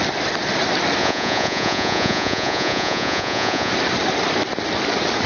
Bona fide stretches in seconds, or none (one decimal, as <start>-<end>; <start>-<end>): 0.0-1.0; 3.7-5.3